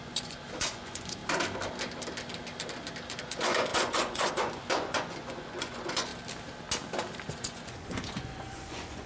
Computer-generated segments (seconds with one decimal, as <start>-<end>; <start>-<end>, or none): 0.0-1.2; 3.2-6.1; 7.3-9.1